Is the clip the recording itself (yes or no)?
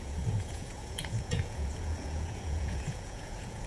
no